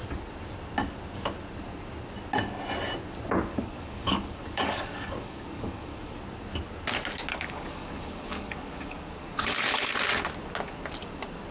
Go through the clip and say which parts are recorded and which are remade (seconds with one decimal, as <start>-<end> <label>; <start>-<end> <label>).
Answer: 0.0-3.5 recorded; 3.5-6.2 remade; 6.2-7.3 recorded; 7.3-9.9 remade; 9.9-11.5 recorded